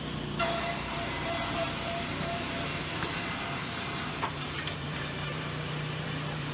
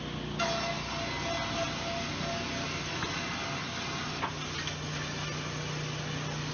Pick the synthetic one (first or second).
first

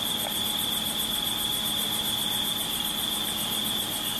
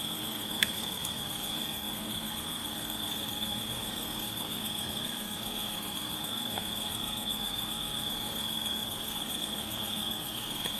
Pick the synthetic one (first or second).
second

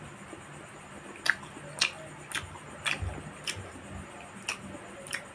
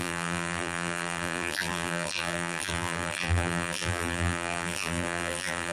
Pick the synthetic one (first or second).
second